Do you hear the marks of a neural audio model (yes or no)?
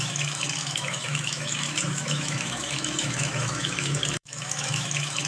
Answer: yes